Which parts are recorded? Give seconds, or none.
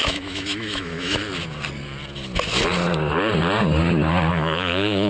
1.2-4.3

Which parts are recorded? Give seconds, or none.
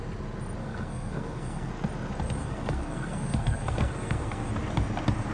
0.0-0.6; 1.7-2.4; 4.5-5.3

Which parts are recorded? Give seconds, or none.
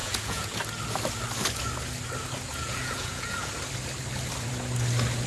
0.6-2.5; 3.5-5.3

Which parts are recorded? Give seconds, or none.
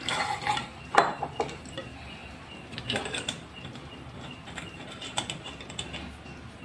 0.0-2.2; 2.8-6.6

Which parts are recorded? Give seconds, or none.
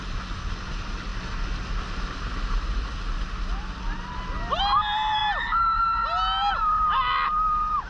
0.0-7.9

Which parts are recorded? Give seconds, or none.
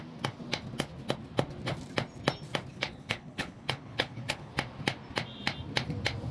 0.0-2.7; 4.5-6.3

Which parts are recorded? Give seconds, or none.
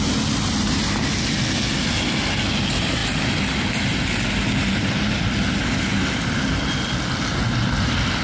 0.0-8.2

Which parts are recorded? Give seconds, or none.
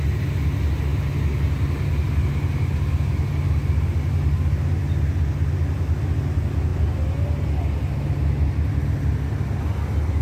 0.0-10.2